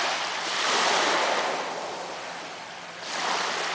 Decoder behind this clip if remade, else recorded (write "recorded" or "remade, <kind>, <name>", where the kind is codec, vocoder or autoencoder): recorded